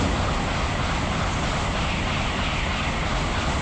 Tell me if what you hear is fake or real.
real